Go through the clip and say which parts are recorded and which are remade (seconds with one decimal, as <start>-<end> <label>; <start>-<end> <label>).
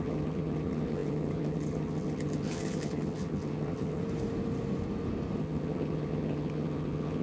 0.0-4.0 remade; 4.0-5.4 recorded; 5.4-7.2 remade